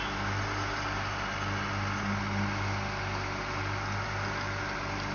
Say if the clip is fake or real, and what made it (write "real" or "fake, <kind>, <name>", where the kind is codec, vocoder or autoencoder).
real